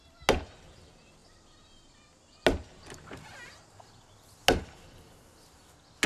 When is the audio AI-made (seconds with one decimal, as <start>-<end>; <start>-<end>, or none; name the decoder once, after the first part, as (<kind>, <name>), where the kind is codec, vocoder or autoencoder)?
none